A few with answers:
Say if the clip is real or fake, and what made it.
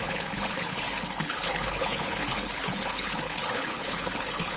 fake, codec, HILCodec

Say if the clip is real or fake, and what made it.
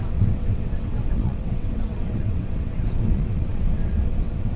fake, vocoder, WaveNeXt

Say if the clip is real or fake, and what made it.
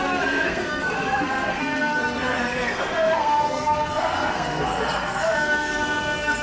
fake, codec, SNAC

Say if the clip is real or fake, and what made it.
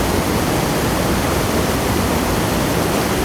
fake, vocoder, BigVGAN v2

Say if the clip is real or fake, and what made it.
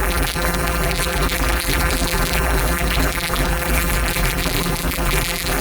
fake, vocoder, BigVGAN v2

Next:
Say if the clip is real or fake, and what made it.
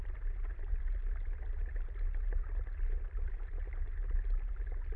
real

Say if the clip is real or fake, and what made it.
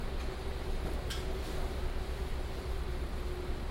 real